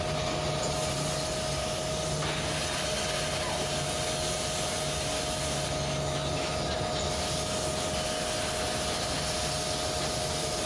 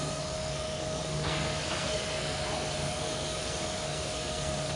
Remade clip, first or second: second